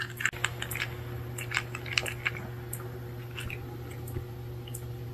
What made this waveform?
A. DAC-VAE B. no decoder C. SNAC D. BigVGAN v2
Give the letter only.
B